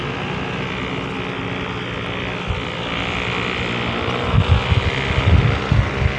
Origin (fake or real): real